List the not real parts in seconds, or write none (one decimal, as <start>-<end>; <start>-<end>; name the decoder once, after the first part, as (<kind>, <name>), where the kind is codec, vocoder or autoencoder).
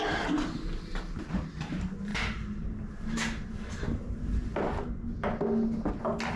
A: none